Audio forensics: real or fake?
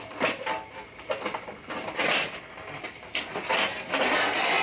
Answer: real